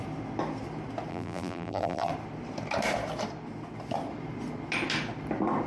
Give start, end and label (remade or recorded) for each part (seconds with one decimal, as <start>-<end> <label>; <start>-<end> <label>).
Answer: 0.0-1.1 recorded; 1.1-2.1 remade; 2.1-5.7 recorded